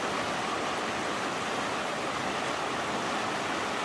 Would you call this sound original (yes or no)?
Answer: yes